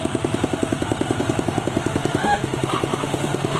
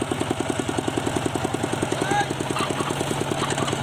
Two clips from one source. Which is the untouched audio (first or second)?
second